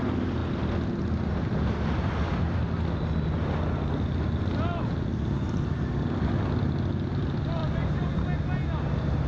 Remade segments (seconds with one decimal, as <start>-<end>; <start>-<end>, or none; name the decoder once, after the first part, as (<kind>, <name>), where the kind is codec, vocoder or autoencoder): none